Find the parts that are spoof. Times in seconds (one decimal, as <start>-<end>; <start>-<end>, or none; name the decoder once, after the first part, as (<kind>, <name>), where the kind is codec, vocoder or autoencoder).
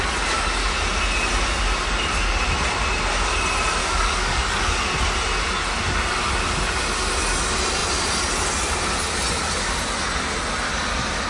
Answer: 3.8-4.7 (codec, DAC)